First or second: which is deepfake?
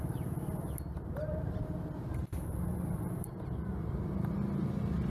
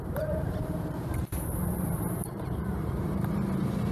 second